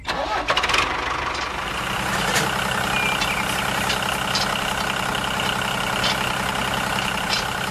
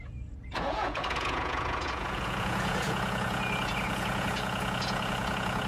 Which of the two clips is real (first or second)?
first